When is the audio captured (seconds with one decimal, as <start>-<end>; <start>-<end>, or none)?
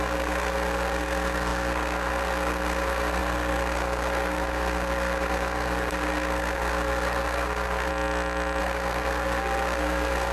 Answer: 7.9-8.6